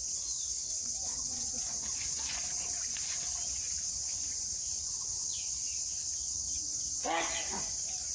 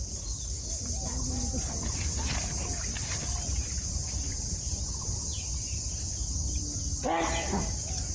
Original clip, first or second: second